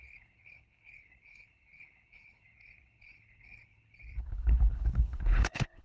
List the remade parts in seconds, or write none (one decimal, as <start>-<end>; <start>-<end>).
0.0-5.8